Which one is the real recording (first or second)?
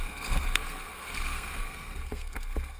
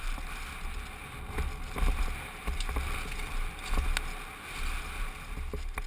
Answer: second